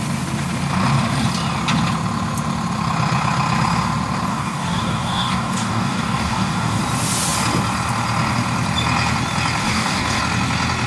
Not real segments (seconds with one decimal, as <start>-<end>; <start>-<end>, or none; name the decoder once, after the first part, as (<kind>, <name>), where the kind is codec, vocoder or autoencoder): 4.3-6.8 (codec, DAC); 9.6-10.2